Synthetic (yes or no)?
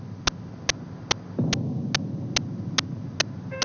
no